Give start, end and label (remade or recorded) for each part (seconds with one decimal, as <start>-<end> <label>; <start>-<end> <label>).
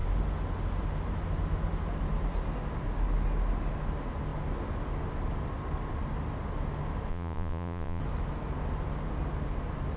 0.0-7.1 recorded; 7.1-8.0 remade; 8.0-10.0 recorded